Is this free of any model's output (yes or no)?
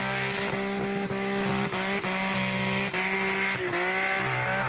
yes